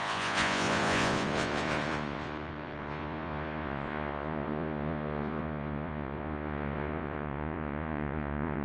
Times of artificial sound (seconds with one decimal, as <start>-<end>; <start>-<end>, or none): 0.0-8.6